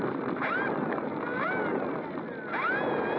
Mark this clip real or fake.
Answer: real